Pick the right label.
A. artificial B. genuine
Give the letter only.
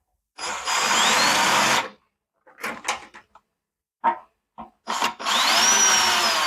B